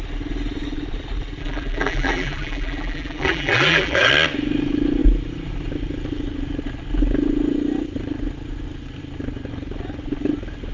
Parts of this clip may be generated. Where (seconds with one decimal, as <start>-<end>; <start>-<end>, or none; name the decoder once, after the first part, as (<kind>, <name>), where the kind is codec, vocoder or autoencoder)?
1.4-4.1 (vocoder, BigVGAN v2)